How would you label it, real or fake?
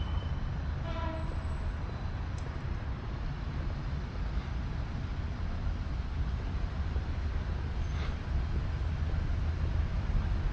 real